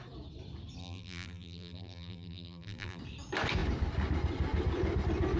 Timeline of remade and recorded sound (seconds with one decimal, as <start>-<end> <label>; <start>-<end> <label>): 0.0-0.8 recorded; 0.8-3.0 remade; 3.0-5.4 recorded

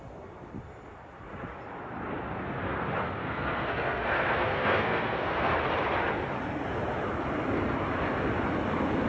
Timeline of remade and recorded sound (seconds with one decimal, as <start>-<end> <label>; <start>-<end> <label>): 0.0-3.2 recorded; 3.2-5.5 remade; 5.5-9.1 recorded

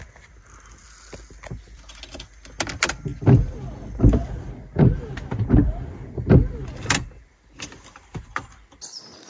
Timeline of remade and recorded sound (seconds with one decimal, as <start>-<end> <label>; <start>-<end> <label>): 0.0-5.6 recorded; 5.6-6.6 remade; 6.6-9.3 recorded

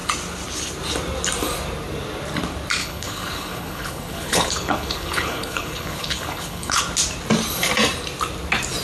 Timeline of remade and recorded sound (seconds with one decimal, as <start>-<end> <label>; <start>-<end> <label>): 0.0-2.8 recorded; 2.8-6.8 remade; 6.8-8.8 recorded

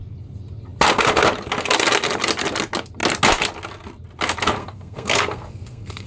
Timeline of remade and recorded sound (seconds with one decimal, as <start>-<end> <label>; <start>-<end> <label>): 0.0-4.6 recorded; 4.6-6.1 remade